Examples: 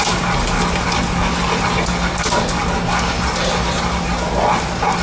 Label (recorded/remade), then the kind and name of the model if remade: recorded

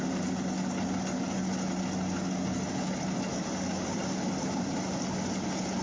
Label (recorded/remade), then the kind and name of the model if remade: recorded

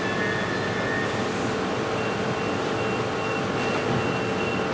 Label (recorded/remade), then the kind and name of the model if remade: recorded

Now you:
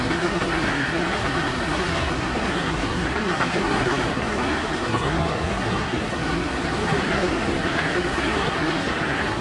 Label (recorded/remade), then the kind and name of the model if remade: remade, codec, SNAC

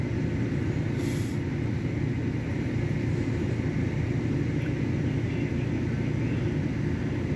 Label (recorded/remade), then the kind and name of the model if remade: recorded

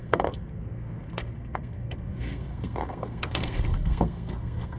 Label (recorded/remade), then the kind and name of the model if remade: remade, codec, SNAC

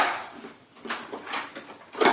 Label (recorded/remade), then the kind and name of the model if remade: recorded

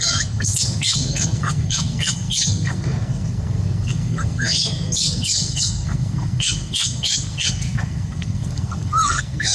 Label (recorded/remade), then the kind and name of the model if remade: remade, codec, SNAC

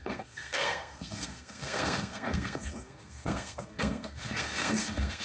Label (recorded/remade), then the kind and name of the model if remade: remade, codec, SNAC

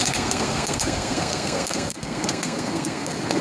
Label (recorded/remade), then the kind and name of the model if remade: remade, codec, SNAC